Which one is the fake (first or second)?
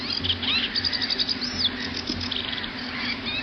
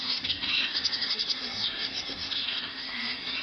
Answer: second